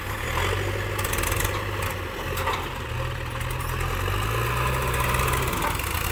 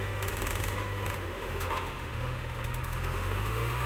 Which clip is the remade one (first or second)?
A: second